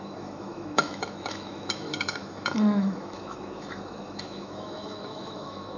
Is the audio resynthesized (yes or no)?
yes